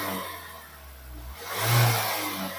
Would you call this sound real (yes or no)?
yes